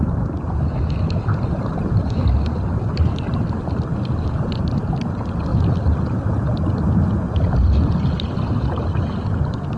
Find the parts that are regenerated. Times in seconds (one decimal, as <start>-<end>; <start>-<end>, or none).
none